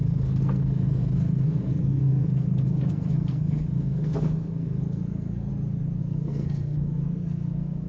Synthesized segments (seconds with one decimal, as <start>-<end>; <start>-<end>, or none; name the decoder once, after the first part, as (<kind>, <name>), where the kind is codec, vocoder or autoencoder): 0.0-5.5 (codec, SNAC); 6.0-7.9